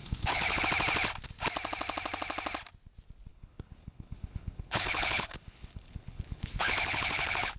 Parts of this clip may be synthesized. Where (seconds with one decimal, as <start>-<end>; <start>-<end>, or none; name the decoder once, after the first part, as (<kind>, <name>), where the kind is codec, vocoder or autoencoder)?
0.0-0.6 (codec, HILCodec); 3.3-7.6